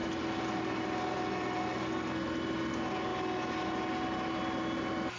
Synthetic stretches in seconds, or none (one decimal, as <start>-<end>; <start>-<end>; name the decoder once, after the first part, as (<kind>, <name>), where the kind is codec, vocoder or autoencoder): none